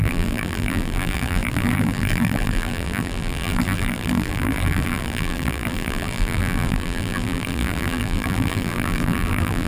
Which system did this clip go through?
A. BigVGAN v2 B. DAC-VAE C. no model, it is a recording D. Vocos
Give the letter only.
A